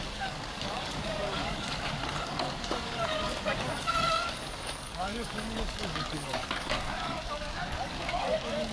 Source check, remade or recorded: remade